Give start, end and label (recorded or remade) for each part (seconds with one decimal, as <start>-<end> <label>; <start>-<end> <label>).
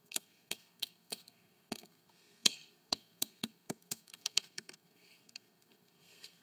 0.0-6.4 remade